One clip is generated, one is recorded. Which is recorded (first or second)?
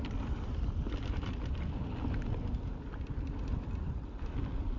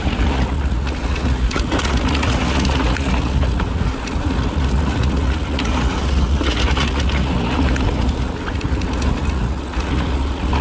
first